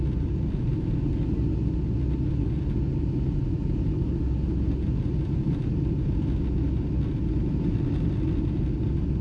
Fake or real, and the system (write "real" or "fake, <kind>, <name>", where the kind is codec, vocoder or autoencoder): real